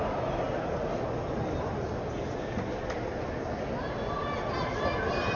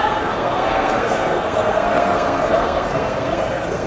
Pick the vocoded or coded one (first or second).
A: second